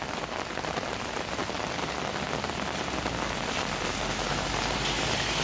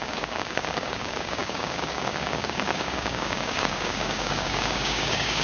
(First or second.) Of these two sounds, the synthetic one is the second